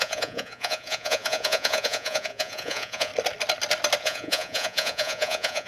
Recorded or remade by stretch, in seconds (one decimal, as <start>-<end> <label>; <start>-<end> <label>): 0.0-3.1 remade; 3.1-4.0 recorded; 4.0-5.7 remade